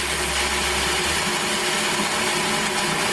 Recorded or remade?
recorded